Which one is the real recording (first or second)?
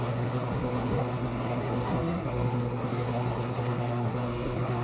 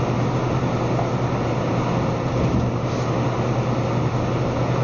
second